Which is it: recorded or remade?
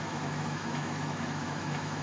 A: remade